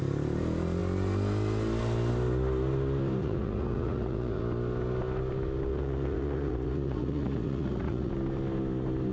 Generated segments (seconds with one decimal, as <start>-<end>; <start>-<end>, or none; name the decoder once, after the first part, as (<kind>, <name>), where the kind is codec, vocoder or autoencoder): 3.2-4.4 (vocoder, Vocos); 5.7-8.1